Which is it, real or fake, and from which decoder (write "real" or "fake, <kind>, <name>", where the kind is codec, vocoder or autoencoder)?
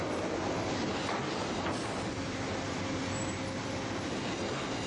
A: real